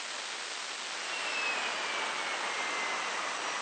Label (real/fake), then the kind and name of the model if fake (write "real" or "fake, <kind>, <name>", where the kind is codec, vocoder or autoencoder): real